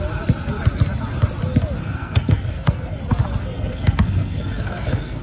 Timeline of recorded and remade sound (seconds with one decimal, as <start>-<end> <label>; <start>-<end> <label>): 0.0-1.8 recorded; 1.8-3.0 remade; 3.0-3.4 recorded; 3.4-5.2 remade